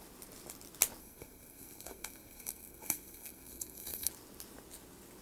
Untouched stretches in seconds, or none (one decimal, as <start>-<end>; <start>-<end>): 0.0-1.0; 4.1-5.2